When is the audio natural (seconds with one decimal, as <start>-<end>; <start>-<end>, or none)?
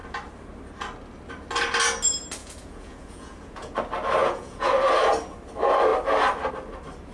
0.0-2.4; 3.8-4.2; 4.7-7.1